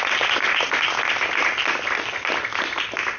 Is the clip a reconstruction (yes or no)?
no